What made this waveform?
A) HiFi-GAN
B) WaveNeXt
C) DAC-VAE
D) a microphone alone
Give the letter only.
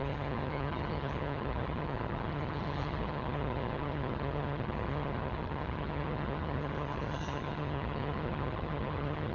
A